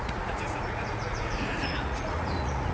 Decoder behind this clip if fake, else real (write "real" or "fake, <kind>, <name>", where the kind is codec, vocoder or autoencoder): fake, vocoder, Vocos